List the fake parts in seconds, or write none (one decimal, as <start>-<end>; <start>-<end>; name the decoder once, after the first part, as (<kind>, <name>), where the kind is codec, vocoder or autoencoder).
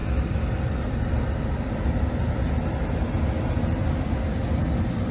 none